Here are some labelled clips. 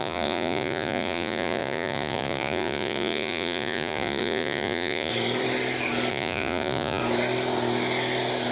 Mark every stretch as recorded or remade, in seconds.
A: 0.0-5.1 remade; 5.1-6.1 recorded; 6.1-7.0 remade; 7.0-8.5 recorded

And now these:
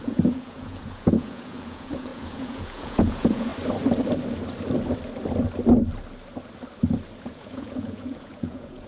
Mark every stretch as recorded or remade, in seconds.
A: 0.0-3.5 remade; 3.5-7.2 recorded; 7.2-8.9 remade